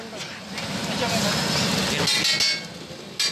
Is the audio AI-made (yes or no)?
no